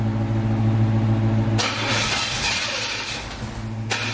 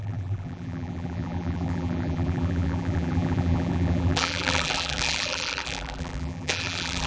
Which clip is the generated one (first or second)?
second